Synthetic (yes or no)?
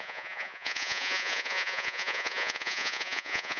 yes